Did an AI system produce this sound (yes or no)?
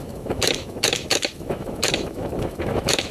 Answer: yes